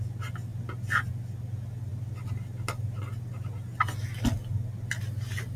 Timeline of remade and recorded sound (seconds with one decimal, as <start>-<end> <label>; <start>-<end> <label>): 0.0-5.6 recorded